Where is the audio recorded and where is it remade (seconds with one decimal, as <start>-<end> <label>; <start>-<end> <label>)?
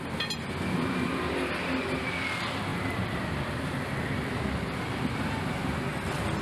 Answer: 0.0-6.4 recorded